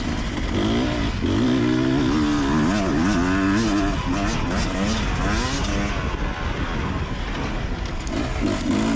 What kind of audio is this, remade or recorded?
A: recorded